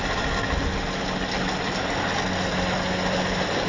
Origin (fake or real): real